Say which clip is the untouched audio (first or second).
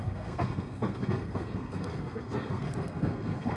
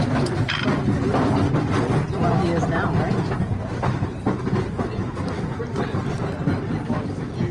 second